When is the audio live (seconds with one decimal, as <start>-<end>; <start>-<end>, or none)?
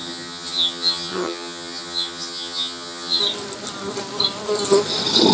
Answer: 3.2-5.3